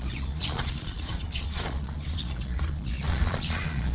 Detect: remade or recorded remade